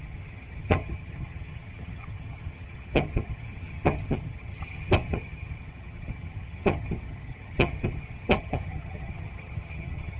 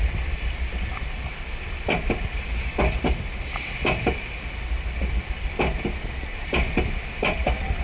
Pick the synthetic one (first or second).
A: first